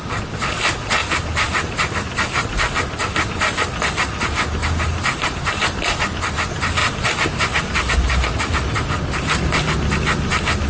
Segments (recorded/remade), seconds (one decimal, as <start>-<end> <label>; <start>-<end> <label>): 0.0-1.0 recorded; 1.0-2.1 remade; 2.1-4.6 recorded; 4.6-5.5 remade; 5.5-6.8 recorded; 6.8-8.3 remade; 8.3-10.7 recorded